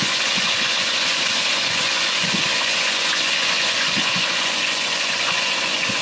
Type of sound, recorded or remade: remade